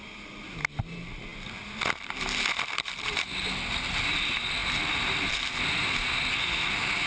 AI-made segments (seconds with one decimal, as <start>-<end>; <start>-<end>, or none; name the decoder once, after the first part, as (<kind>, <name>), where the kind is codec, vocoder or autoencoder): none